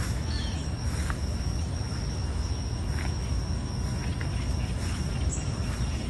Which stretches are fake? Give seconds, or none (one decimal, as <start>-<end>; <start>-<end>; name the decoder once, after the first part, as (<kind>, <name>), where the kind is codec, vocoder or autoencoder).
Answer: 0.0-3.7 (autoencoder, DAC-VAE); 4.3-6.1